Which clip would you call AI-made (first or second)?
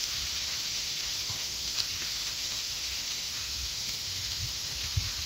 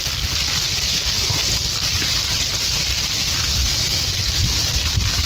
first